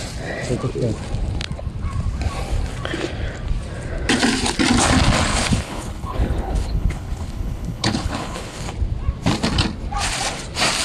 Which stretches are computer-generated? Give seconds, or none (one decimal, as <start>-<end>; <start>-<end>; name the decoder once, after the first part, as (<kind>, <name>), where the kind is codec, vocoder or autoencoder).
5.3-8.7 (codec, HILCodec)